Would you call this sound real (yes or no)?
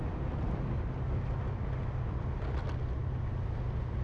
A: yes